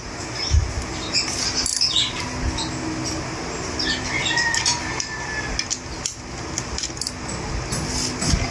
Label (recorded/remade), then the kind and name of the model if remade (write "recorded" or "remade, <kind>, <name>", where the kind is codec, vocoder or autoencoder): recorded